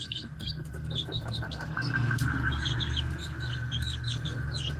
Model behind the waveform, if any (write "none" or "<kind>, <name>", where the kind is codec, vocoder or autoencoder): codec, SNAC